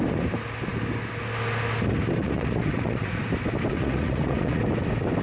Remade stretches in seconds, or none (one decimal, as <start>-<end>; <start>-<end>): 2.2-3.2; 3.7-4.6